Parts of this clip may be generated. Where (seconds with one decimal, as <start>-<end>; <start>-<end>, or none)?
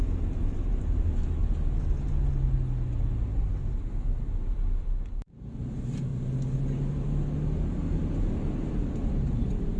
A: 0.0-1.4; 5.1-6.1; 7.6-9.8